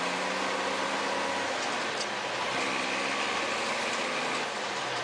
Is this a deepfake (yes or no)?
no